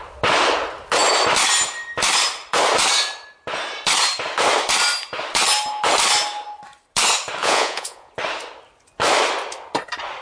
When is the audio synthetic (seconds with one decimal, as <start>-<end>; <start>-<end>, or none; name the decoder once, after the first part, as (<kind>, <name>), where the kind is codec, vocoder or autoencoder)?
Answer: 7.4-8.1 (vocoder, Vocos)